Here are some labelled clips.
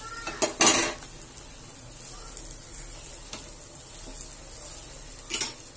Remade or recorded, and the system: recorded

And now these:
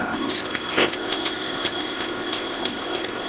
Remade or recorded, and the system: remade, codec, ZipCodec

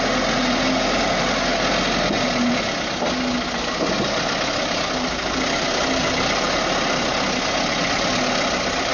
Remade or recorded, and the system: recorded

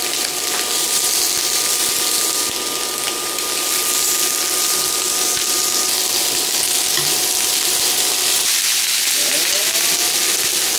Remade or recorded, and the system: recorded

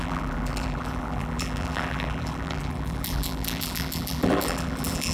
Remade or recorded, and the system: remade, vocoder, BigVGAN v2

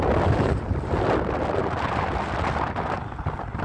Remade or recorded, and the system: recorded